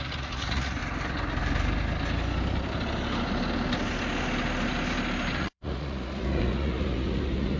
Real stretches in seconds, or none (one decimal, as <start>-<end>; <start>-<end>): 0.8-5.4